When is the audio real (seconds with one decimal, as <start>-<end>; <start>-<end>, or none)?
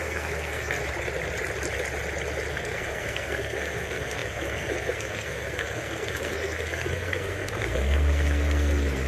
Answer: 0.8-2.5